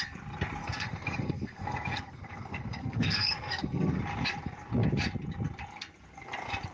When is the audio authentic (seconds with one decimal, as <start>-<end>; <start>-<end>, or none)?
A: 0.0-0.6; 4.0-6.7